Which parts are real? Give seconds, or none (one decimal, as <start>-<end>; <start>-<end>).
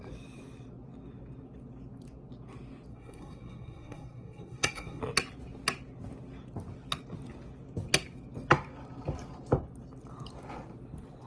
0.0-2.9; 5.0-11.3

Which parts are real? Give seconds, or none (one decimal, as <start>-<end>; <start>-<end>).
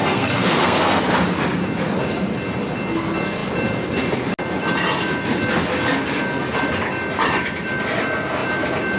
1.0-9.0